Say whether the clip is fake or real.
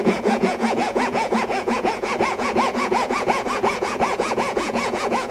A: fake